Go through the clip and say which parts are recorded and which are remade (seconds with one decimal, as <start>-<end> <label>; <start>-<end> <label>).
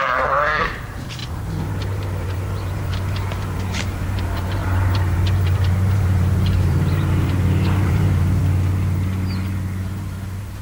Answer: 0.0-8.4 remade; 8.4-9.8 recorded; 9.8-10.6 remade